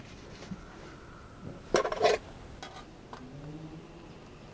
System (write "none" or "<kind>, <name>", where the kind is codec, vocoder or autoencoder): none